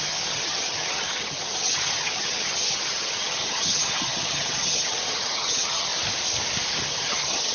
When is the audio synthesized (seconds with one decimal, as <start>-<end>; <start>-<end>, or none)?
0.0-5.9; 6.9-7.5